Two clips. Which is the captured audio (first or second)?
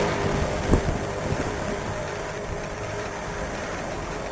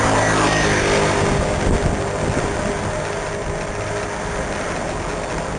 second